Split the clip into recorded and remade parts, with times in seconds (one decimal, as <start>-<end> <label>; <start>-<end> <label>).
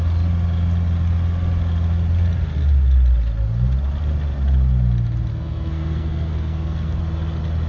0.0-5.3 recorded; 5.3-7.0 remade; 7.0-7.7 recorded